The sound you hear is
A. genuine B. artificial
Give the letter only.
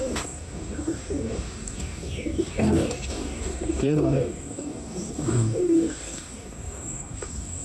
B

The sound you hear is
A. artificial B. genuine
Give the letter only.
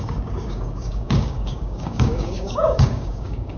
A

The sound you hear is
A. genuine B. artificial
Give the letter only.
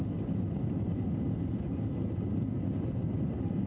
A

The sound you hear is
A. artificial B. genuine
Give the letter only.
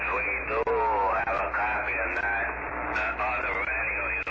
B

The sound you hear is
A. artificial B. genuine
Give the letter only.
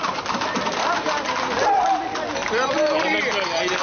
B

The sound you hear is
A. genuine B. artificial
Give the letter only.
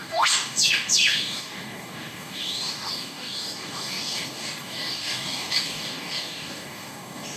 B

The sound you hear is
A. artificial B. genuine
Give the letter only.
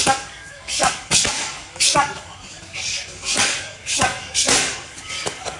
A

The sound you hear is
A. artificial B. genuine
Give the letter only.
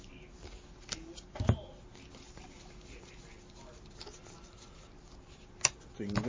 B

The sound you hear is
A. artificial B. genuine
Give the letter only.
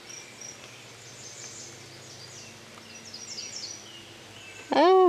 B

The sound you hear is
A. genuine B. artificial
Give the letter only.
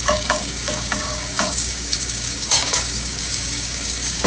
B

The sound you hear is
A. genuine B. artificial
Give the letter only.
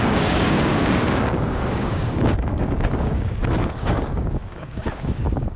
B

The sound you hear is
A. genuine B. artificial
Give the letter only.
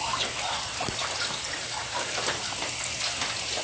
A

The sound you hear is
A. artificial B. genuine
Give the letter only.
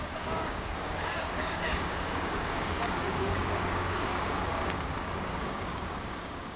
A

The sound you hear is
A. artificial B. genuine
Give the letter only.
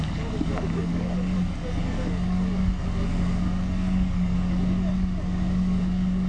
A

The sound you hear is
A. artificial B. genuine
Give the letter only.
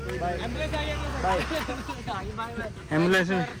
B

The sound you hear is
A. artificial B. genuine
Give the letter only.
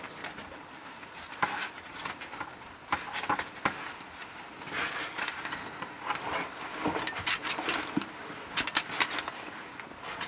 B